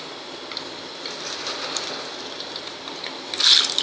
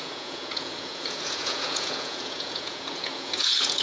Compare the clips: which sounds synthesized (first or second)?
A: second